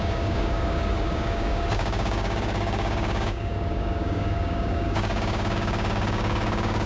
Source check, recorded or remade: remade